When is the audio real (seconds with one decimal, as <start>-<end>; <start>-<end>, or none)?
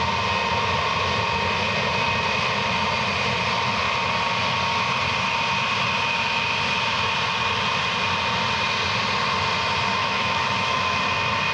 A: 0.0-10.0; 11.0-11.5